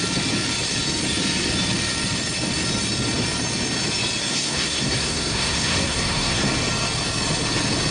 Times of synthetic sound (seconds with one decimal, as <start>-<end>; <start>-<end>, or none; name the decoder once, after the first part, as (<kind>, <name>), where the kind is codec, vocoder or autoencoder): 4.3-6.4 (codec, SNAC)